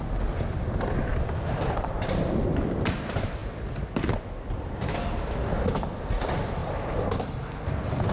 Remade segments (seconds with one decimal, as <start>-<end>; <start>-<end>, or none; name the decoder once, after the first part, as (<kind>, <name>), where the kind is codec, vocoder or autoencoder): 1.1-2.1 (vocoder, BigVGAN v2); 6.6-7.5